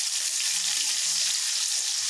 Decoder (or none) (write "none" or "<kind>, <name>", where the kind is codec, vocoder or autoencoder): vocoder, BigVGAN v2